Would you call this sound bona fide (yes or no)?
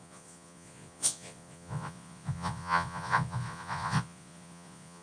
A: no